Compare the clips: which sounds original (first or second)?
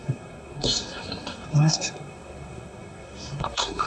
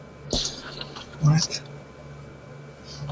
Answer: second